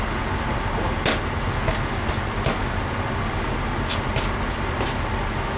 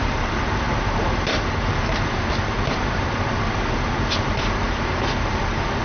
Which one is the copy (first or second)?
second